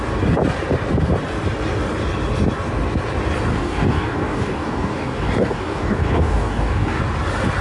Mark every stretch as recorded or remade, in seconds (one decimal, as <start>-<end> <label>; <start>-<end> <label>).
0.0-3.5 recorded; 3.5-7.0 remade; 7.0-7.6 recorded